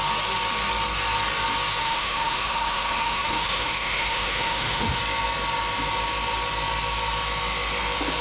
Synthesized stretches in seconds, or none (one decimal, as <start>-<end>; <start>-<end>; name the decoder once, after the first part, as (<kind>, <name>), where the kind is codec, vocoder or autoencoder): 1.8-5.0 (autoencoder, DAC-VAE)